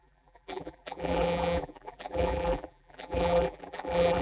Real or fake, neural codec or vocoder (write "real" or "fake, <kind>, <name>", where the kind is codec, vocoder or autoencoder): fake, vocoder, BigVGAN v2